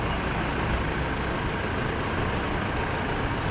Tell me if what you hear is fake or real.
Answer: real